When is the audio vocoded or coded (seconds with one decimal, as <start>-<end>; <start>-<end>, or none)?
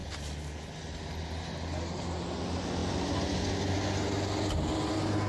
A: none